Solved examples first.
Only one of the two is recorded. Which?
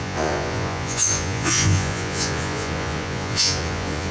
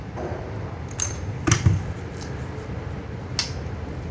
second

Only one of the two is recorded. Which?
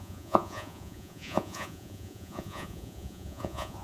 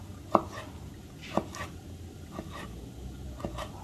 second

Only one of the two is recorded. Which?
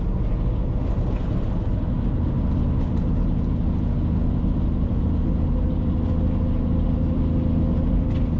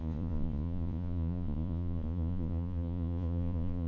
first